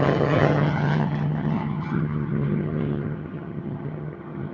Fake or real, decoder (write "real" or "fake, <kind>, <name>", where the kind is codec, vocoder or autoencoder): fake, vocoder, HiFi-GAN